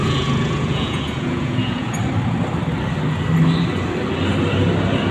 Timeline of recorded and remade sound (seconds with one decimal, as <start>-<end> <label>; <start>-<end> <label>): 0.0-1.9 remade; 1.9-5.1 recorded